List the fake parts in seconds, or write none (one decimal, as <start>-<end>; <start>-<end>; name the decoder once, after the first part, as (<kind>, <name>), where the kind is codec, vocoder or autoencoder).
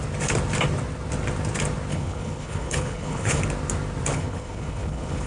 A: 1.9-3.4 (codec, HILCodec); 4.1-5.3